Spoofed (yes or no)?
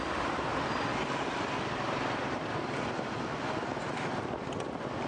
no